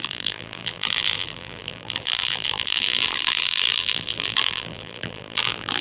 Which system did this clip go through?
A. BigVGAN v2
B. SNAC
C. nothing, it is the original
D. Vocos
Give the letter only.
A